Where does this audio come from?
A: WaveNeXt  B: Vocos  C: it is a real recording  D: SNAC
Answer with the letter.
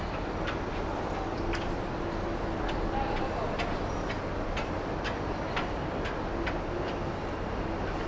C